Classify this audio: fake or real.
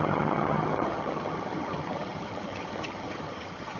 fake